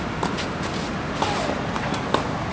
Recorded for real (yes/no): yes